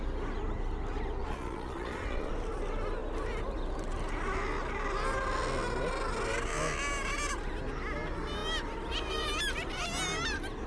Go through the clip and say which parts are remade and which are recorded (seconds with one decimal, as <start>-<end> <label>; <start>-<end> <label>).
0.0-1.2 recorded; 1.2-2.3 remade; 2.3-10.7 recorded